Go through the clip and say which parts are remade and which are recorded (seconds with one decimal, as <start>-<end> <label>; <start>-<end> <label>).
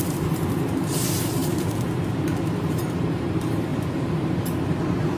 0.0-5.2 remade